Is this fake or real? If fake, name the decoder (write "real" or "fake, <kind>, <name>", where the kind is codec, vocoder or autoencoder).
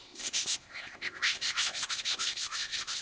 fake, codec, ZipCodec